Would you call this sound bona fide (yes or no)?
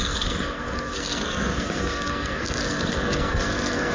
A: no